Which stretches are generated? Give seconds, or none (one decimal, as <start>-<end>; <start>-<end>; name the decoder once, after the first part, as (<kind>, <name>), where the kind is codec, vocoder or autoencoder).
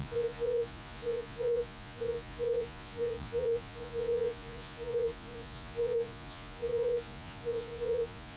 0.0-8.4 (vocoder, Vocos)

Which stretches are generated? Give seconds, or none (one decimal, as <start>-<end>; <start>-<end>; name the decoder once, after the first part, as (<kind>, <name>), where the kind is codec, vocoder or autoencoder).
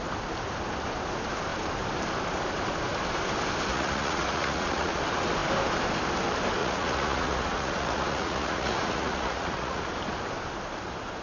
3.7-5.0 (vocoder, Vocos); 6.6-9.8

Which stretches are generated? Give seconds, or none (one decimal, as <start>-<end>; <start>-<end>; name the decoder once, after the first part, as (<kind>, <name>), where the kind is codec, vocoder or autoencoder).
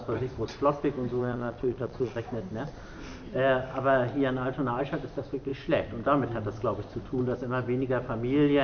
1.2-2.2 (vocoder, Vocos)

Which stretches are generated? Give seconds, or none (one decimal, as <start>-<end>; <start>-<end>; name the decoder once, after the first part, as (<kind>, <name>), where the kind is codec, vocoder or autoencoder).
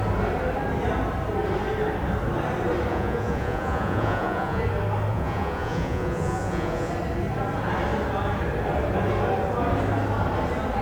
2.9-4.6 (vocoder, Vocos); 5.1-6.9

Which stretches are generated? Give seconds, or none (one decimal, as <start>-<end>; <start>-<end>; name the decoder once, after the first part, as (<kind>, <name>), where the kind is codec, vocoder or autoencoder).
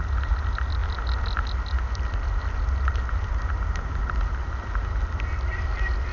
none